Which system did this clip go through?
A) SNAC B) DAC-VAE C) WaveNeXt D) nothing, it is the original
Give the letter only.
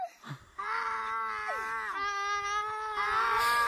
D